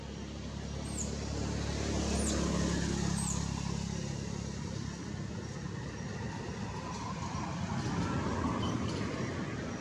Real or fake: real